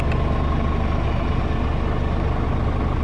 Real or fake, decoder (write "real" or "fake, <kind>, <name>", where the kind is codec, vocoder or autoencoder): real